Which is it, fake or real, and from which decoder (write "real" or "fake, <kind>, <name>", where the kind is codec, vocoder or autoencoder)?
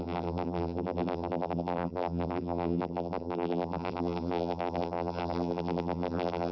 fake, vocoder, BigVGAN v2